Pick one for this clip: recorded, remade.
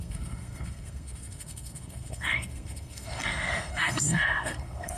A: remade